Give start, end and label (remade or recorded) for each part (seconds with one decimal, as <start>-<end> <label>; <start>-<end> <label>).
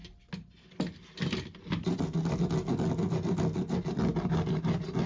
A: 0.0-5.1 recorded